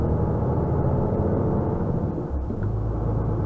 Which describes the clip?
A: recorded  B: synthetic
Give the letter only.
A